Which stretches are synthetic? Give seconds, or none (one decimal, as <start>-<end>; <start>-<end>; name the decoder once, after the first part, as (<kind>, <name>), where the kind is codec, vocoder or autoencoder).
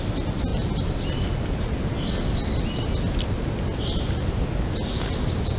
none